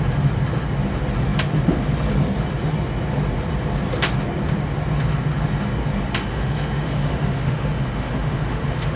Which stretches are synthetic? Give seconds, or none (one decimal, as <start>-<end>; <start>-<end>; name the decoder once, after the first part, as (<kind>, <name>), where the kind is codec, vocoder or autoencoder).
6.2-9.0 (autoencoder, DAC-VAE)